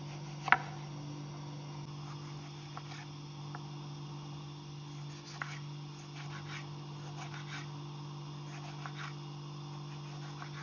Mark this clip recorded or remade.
recorded